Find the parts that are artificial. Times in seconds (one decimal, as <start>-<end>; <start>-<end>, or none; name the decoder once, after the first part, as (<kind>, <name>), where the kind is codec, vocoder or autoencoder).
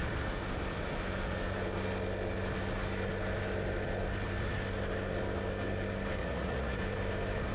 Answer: 6.2-6.8 (vocoder, Vocos)